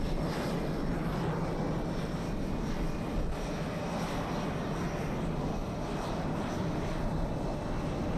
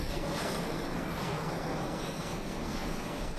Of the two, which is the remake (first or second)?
second